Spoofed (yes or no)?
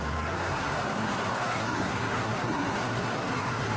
yes